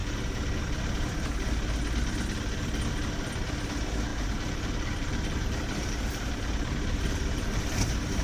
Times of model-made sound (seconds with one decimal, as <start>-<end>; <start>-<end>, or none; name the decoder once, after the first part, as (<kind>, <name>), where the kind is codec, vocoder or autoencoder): 4.1-7.6 (vocoder, BigVGAN v2)